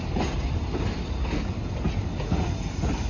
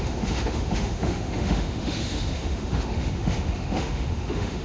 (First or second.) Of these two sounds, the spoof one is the second